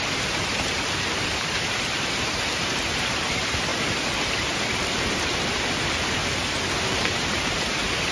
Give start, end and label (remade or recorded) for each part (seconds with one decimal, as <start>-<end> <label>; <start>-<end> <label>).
0.0-6.2 remade; 6.2-6.8 recorded; 6.8-8.1 remade